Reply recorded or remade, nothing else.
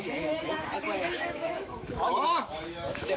remade